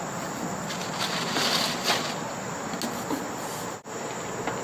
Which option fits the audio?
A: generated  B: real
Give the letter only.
B